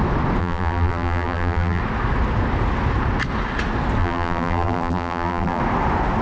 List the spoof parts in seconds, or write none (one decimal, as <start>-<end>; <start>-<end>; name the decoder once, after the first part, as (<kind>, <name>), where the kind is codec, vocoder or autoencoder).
0.4-1.8 (vocoder, BigVGAN v2); 4.0-5.6